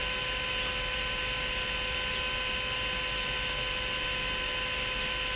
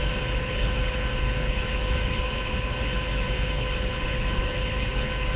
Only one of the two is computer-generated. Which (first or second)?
second